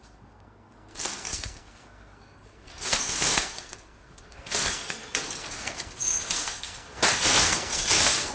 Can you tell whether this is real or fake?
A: fake